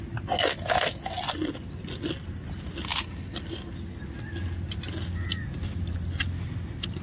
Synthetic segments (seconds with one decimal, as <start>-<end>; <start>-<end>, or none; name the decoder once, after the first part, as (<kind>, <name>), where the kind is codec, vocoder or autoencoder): none